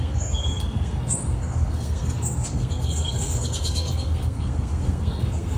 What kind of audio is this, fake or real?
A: fake